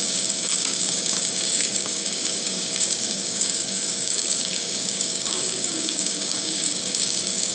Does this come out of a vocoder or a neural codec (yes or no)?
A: yes